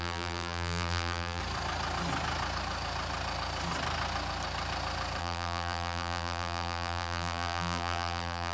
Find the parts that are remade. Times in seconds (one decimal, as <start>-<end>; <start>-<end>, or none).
0.0-1.4; 5.2-8.5